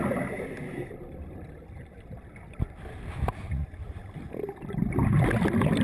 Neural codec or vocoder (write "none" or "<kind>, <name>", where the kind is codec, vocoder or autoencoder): vocoder, BigVGAN v2